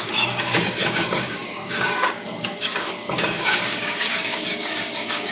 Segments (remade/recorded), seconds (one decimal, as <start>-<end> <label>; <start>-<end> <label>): 0.0-5.3 remade